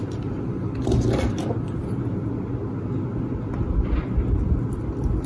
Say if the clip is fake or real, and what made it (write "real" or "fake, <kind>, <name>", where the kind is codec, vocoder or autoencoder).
real